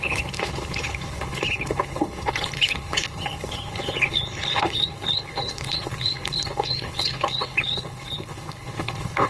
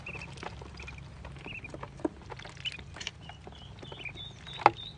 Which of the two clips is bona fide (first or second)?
second